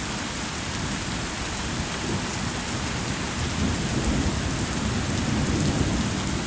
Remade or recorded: recorded